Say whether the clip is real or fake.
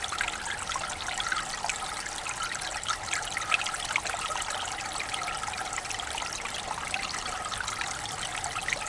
real